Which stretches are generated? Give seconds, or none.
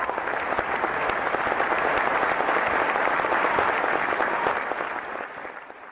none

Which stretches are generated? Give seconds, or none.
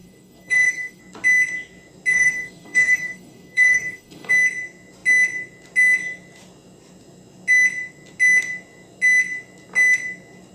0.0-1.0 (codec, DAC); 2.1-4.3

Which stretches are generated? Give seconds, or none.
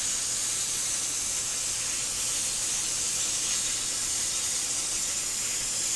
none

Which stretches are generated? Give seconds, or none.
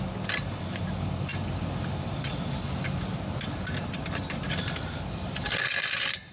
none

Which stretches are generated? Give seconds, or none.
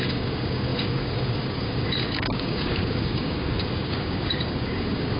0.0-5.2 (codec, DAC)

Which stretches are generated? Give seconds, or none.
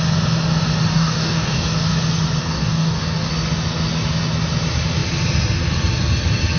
0.9-1.9 (codec, DAC); 2.4-3.3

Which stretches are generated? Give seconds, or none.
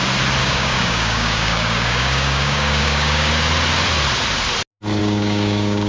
0.4-3.3 (codec, DAC); 5.0-5.9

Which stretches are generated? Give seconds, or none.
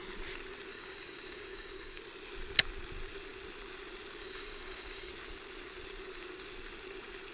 0.7-2.0 (codec, DAC); 4.2-5.1